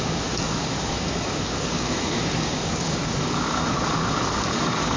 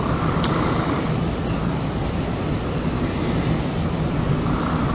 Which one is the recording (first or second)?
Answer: second